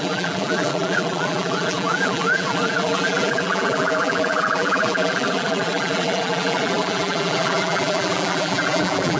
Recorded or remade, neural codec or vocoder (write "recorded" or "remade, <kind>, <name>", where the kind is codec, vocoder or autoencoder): remade, vocoder, BigVGAN v2